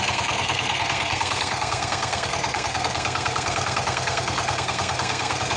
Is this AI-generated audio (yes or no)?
yes